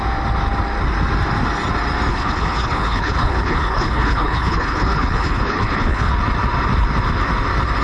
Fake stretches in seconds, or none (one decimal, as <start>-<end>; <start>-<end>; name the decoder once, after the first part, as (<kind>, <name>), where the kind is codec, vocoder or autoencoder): 2.1-6.1 (codec, HILCodec)